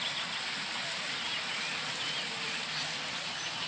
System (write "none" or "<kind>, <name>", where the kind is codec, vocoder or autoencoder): none